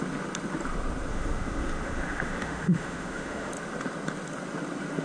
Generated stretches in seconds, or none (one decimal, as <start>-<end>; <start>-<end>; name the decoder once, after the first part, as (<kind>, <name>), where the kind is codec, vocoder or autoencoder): 1.1-3.5 (autoencoder, DAC-VAE)